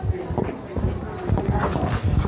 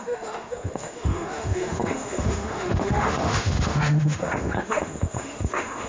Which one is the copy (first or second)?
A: second